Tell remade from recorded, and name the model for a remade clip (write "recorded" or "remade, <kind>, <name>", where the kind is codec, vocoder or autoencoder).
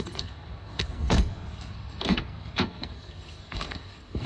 remade, codec, SNAC